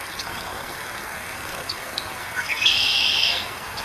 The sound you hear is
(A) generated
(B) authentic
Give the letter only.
A